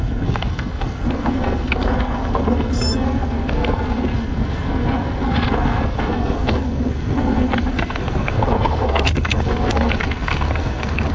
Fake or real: fake